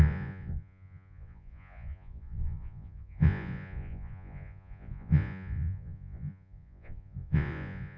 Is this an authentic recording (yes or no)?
no